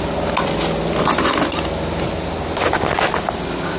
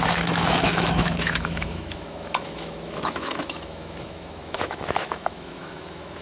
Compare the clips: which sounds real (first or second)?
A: first